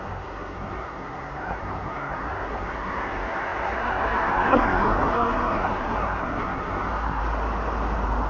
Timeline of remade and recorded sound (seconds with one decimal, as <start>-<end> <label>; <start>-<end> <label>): 0.0-7.2 remade; 7.2-8.3 recorded